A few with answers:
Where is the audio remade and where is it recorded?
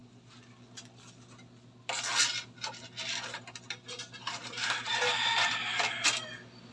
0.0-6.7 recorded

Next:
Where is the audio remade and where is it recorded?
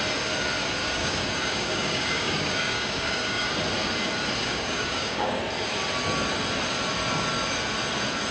0.0-0.8 recorded; 0.8-3.5 remade; 3.5-4.4 recorded; 4.4-5.4 remade; 5.4-8.3 recorded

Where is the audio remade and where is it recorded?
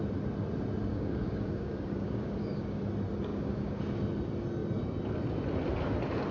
0.0-0.9 recorded; 0.9-2.8 remade; 2.8-3.3 recorded; 3.3-3.8 remade; 3.8-6.3 recorded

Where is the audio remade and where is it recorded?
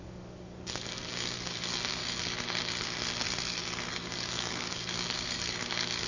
0.0-2.0 remade; 2.0-3.9 recorded; 3.9-6.1 remade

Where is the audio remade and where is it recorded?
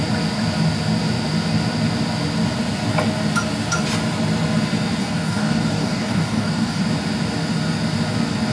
0.0-5.0 recorded; 5.0-6.8 remade; 6.8-8.5 recorded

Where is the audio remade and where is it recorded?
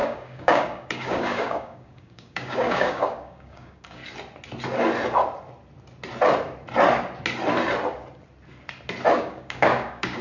0.0-4.0 remade; 4.0-9.1 recorded; 9.1-10.2 remade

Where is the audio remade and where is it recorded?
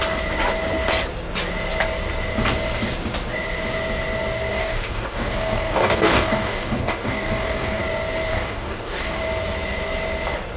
0.0-4.5 recorded; 4.5-7.8 remade; 7.8-8.3 recorded; 8.3-9.2 remade; 9.2-10.6 recorded